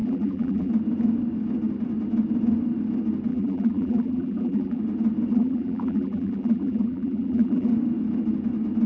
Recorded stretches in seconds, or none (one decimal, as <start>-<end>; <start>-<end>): 0.7-3.3; 4.8-5.3; 7.7-8.9